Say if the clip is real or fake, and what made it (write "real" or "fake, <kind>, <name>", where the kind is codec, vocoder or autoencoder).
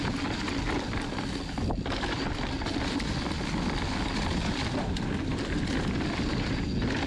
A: real